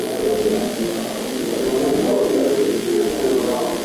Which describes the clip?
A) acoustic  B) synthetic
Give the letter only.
A